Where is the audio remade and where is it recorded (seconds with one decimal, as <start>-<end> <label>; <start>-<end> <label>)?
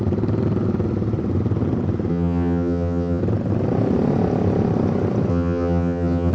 0.0-2.1 recorded; 2.1-3.2 remade; 3.2-5.3 recorded; 5.3-6.3 remade